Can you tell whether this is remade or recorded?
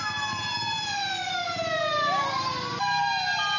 recorded